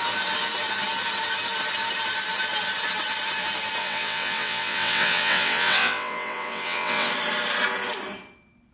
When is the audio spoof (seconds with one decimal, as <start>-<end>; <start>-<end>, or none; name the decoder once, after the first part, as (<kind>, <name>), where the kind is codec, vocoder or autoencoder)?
3.8-7.1 (vocoder, WaveNeXt)

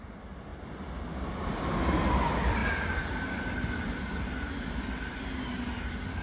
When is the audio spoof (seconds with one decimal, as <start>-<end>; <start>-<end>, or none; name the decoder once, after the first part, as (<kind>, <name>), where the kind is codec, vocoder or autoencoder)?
none

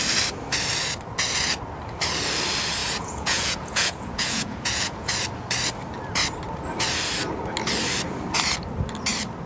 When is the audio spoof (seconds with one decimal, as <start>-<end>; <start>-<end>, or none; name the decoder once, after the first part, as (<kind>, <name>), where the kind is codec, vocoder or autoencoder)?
2.8-5.1 (vocoder, Vocos)

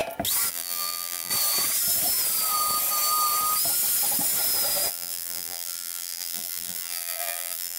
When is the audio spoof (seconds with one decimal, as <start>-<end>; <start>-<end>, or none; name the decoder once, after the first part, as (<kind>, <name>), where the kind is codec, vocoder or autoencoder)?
0.5-1.3 (vocoder, BigVGAN v2); 4.9-7.8

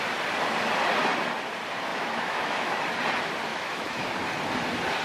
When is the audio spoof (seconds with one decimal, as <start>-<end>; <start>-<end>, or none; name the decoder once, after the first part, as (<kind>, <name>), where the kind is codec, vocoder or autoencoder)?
1.9-2.7 (autoencoder, DAC-VAE); 3.5-4.1

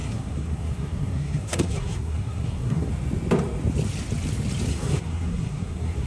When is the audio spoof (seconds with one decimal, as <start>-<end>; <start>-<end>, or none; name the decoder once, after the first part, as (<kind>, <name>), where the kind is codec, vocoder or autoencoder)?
0.0-2.9 (codec, SNAC); 4.7-6.1